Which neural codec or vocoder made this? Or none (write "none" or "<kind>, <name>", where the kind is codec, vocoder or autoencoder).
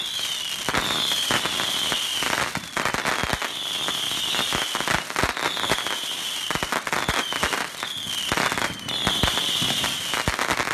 none